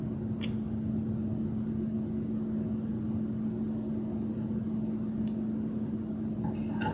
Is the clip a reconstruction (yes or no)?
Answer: no